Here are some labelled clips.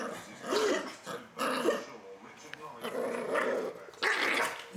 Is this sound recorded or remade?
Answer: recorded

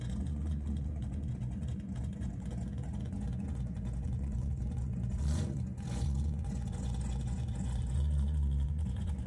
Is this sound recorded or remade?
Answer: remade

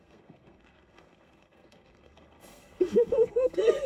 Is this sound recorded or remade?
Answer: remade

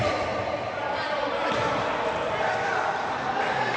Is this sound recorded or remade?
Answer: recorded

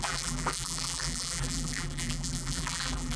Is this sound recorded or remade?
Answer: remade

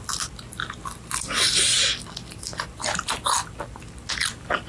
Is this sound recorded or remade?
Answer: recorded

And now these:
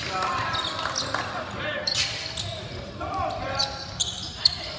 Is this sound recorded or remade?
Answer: recorded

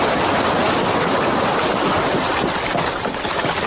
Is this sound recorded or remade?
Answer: recorded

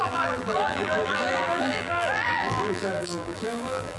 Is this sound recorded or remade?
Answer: remade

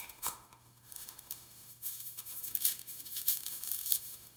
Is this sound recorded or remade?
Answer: remade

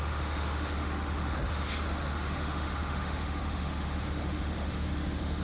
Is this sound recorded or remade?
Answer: remade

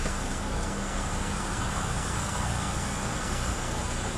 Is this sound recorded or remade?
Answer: remade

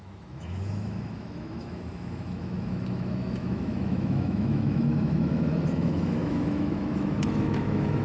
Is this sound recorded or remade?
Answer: remade